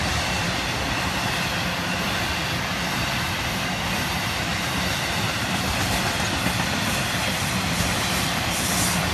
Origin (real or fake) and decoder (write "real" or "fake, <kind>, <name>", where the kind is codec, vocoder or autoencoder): fake, vocoder, BigVGAN v2